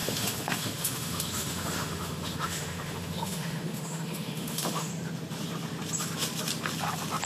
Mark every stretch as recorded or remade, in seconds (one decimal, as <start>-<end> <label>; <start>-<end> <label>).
0.0-4.9 remade; 4.9-7.3 recorded

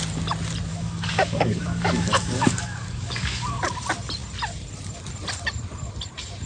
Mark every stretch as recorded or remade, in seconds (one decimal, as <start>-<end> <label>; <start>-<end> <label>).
0.0-0.7 recorded; 0.7-3.6 remade; 3.6-6.5 recorded

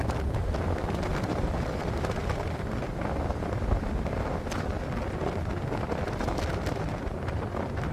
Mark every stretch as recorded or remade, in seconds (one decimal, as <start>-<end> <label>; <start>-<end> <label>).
0.0-0.4 remade; 0.4-1.3 recorded; 1.3-2.2 remade; 2.2-5.9 recorded; 5.9-7.9 remade

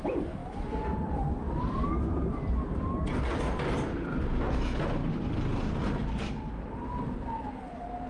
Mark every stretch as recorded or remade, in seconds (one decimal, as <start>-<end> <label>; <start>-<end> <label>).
0.0-5.0 recorded; 5.0-6.5 remade; 6.5-8.1 recorded

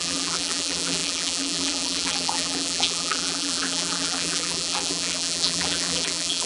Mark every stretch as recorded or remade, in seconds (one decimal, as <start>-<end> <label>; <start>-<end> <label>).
0.0-6.5 remade

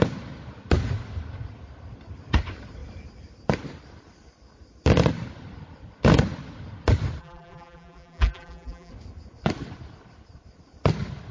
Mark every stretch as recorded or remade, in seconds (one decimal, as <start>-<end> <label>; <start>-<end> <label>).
0.0-7.2 recorded; 7.2-8.9 remade; 8.9-11.3 recorded

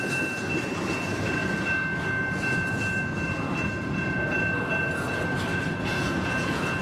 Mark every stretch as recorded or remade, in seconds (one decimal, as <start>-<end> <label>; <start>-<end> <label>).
0.0-5.5 recorded; 5.5-6.8 remade

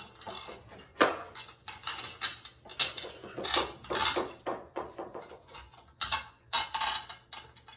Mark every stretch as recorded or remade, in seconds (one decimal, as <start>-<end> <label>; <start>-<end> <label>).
0.0-0.9 recorded; 0.9-2.0 remade; 2.0-2.7 recorded; 2.7-3.5 remade; 3.5-4.5 recorded; 4.5-7.1 remade; 7.1-7.8 recorded